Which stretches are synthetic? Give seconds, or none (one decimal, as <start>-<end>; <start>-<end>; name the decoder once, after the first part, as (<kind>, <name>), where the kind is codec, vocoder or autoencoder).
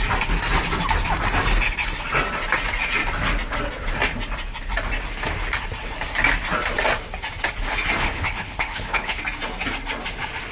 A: 8.0-9.2 (codec, HILCodec)